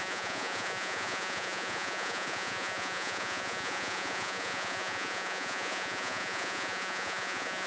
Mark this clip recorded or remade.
remade